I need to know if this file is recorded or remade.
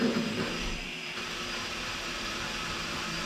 remade